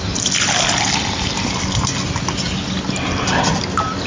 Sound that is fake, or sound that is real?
real